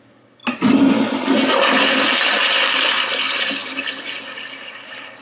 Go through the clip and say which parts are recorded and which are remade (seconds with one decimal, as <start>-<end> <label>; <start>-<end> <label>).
0.0-5.2 recorded